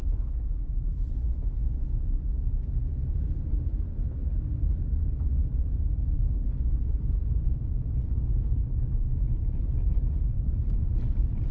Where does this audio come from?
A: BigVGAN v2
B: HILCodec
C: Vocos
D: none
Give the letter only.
A